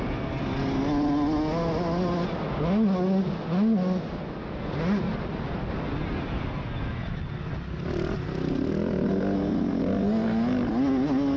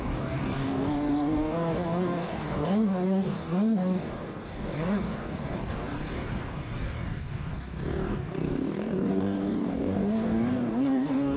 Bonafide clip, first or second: first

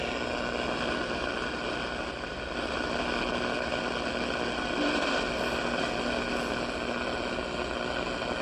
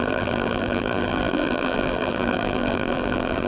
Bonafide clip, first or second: first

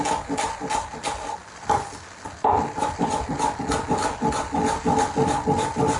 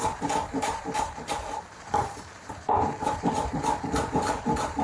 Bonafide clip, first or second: first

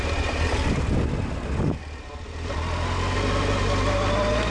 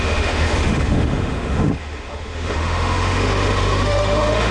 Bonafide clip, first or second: first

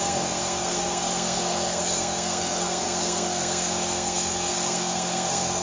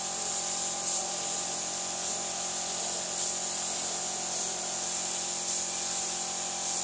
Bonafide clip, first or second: second